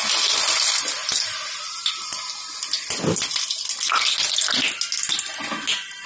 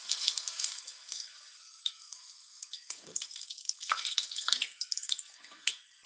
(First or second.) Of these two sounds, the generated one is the second